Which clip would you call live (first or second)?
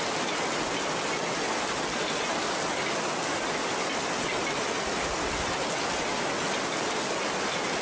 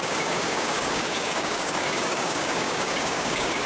first